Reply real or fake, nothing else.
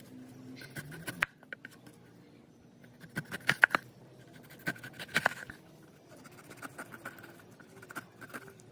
real